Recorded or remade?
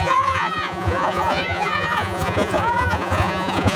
remade